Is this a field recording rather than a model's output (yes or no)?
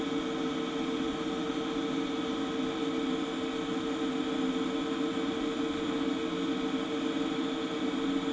yes